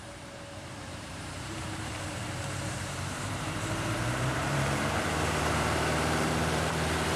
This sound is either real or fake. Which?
fake